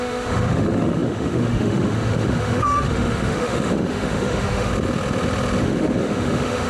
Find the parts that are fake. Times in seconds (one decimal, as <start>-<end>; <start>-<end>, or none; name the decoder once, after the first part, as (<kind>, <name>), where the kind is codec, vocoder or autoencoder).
0.0-4.7 (autoencoder, DAC-VAE); 5.6-6.7